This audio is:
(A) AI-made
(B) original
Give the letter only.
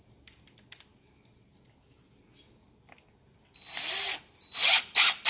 B